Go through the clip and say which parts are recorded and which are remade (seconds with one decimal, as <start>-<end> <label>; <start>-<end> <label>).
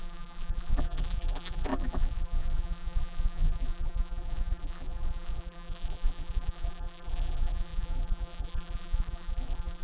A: 0.0-9.8 remade